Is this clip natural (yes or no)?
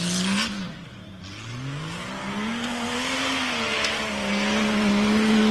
yes